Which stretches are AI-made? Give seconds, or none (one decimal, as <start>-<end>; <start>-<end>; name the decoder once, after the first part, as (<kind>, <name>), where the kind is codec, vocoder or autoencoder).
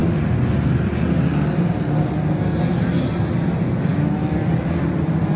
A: none